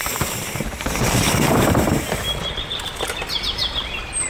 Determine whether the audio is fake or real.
real